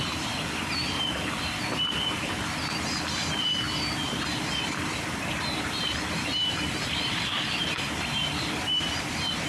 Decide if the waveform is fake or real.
real